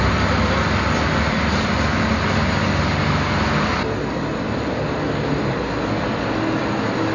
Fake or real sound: real